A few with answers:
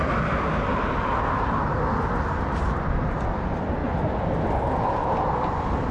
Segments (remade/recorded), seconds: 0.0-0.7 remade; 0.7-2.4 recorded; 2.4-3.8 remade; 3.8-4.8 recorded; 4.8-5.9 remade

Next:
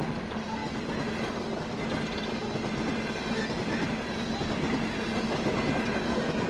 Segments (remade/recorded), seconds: 0.0-6.5 recorded

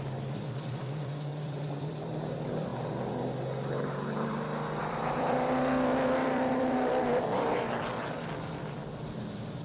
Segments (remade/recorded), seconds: 0.0-2.7 remade; 2.7-4.8 recorded; 4.8-9.6 remade

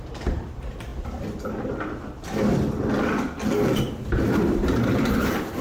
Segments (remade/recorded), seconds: 0.0-0.9 remade; 0.9-3.8 recorded; 3.8-5.6 remade

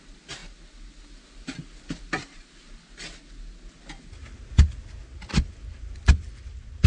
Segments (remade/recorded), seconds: 0.0-6.9 recorded